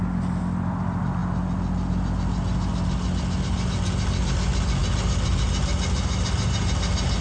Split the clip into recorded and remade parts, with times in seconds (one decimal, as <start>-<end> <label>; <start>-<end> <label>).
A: 0.0-7.2 recorded